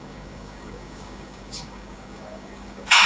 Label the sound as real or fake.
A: fake